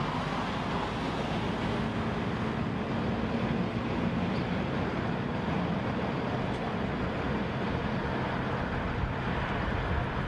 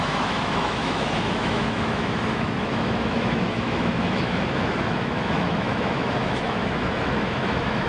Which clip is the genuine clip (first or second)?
first